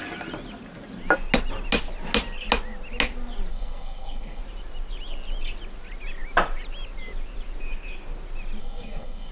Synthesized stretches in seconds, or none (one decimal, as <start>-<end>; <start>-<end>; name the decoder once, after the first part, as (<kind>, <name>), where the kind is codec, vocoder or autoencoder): 3.5-4.4 (codec, SNAC); 8.6-9.3